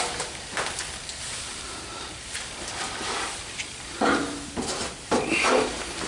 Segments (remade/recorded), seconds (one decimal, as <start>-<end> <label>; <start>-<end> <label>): 0.0-1.5 recorded; 1.5-5.2 remade; 5.2-6.1 recorded